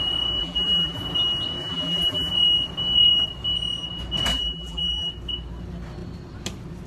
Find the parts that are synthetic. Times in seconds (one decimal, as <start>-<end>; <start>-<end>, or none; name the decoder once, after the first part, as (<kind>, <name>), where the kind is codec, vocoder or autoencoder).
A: 0.4-1.0 (vocoder, BigVGAN v2); 1.6-2.3; 4.3-5.1